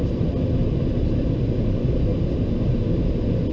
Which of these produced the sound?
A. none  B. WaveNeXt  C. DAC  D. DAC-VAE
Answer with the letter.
A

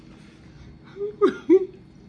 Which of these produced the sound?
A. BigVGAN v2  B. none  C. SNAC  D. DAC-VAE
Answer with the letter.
B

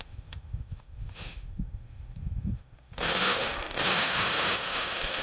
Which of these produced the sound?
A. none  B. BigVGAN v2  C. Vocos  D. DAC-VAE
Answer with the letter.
D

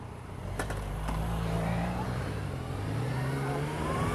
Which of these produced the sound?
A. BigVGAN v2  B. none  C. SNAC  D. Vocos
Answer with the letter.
A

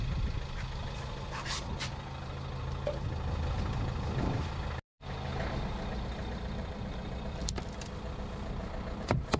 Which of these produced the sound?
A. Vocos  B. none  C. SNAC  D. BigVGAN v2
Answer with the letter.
B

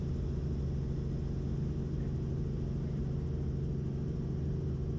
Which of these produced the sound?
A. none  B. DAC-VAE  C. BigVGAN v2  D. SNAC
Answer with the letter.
A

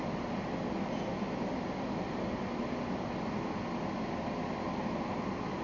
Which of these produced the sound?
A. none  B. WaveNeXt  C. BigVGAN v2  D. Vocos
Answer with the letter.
A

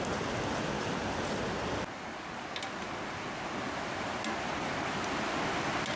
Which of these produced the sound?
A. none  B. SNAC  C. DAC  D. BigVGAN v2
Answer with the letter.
A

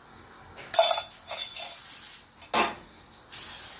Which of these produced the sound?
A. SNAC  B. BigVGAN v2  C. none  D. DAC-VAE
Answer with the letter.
C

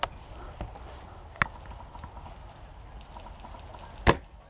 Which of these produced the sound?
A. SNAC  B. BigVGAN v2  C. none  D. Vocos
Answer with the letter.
C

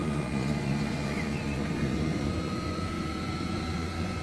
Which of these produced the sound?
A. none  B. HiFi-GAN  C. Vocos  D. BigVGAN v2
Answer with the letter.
C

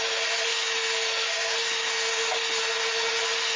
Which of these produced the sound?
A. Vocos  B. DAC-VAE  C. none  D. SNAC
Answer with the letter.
C